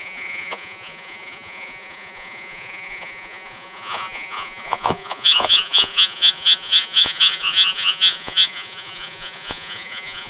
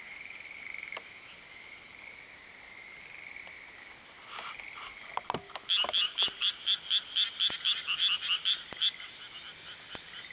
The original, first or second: second